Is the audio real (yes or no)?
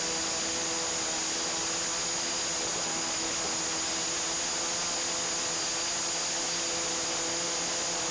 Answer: yes